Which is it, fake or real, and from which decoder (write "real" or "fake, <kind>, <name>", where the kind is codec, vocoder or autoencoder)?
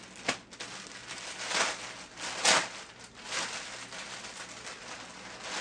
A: real